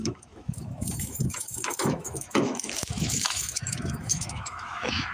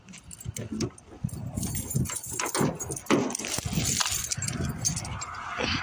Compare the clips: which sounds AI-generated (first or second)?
first